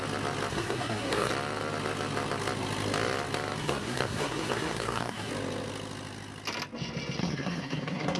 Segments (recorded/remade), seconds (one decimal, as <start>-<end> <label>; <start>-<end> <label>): 0.0-0.5 recorded; 0.5-1.3 remade; 1.3-3.6 recorded; 3.6-5.3 remade; 5.3-7.2 recorded; 7.2-8.2 remade